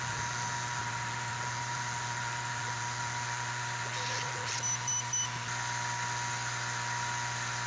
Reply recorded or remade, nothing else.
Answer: recorded